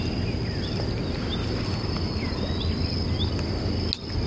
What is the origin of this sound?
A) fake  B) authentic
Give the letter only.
B